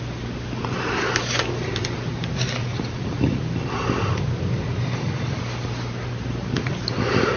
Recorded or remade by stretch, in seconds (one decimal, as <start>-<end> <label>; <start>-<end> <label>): 0.0-2.6 recorded; 2.6-3.4 remade; 3.4-7.4 recorded